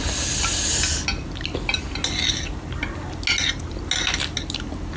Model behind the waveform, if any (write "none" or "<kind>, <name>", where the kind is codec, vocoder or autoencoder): none